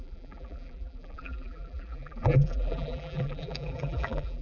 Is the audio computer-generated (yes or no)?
yes